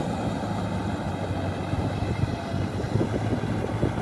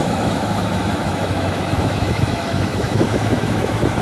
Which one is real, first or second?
first